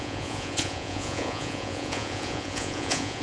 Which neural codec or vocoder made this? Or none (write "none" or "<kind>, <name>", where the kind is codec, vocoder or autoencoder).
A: vocoder, Vocos